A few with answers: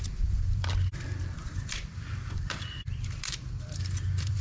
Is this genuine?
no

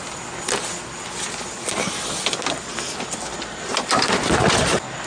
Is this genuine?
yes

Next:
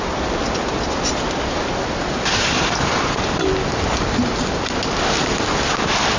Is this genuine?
yes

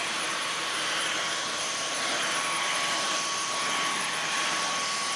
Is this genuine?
no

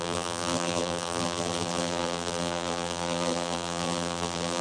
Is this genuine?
no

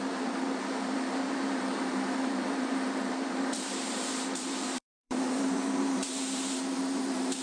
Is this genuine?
no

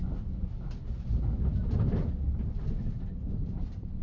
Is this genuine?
yes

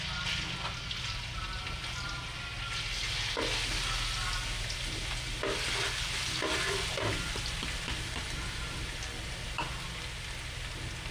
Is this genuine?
yes